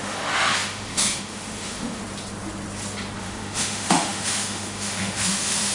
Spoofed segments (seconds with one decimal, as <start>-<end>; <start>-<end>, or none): 0.0-2.0; 3.2-5.7